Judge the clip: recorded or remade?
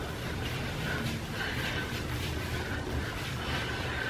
recorded